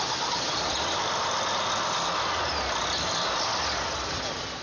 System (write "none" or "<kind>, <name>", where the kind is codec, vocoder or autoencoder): none